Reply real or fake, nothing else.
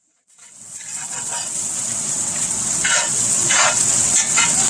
fake